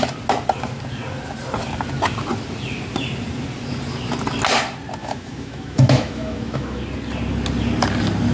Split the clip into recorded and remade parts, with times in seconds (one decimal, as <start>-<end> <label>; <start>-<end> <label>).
0.0-5.0 recorded; 5.0-6.8 remade; 6.8-8.3 recorded